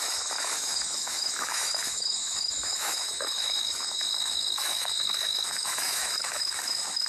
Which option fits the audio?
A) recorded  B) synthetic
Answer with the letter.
B